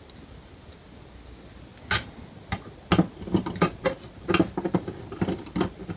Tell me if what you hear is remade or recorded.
recorded